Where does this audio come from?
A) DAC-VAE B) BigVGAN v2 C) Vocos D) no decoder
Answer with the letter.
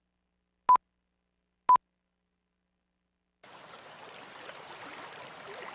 D